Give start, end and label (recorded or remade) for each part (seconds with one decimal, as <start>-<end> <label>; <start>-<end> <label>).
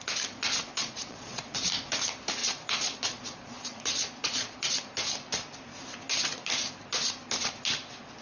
0.0-0.6 recorded; 0.6-1.6 remade; 1.6-2.4 recorded; 2.4-4.7 remade; 4.7-8.2 recorded